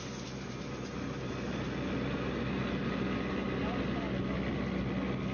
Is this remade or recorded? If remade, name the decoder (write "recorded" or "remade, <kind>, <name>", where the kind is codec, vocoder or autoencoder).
recorded